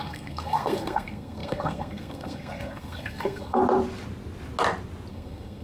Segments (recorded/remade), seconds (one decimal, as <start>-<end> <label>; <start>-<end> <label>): 0.0-3.6 remade; 3.6-5.1 recorded; 5.1-5.6 remade